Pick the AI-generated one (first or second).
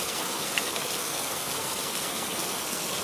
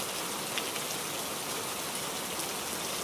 first